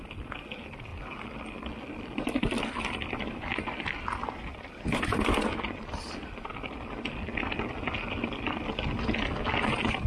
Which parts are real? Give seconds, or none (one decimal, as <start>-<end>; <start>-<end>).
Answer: 0.0-10.1